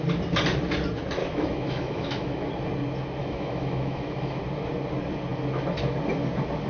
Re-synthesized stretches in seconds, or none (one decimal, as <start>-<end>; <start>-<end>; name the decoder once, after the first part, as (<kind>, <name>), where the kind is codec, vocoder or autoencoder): 1.2-2.5 (autoencoder, DAC-VAE); 3.2-4.4